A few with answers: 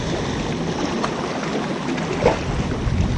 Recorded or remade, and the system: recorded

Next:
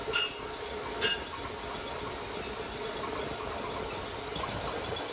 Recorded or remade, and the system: recorded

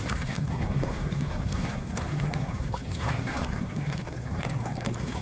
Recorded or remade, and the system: remade, codec, SNAC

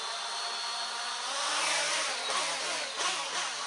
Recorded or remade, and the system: recorded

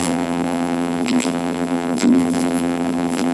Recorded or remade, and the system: remade, vocoder, BigVGAN v2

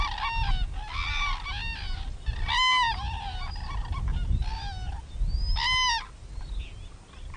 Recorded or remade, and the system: recorded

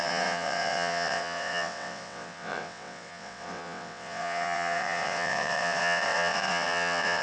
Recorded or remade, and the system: remade, vocoder, WaveNeXt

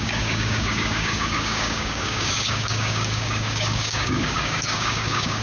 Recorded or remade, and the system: remade, codec, DAC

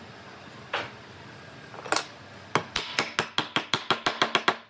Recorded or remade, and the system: recorded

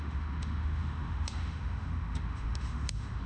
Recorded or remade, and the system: remade, autoencoder, DAC-VAE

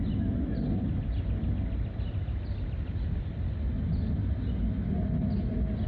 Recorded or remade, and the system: recorded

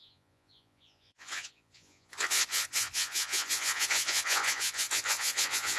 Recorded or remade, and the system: remade, vocoder, Vocos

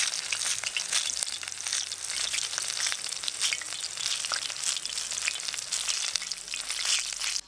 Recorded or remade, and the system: recorded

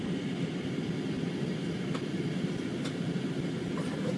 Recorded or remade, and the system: remade, vocoder, BigVGAN v2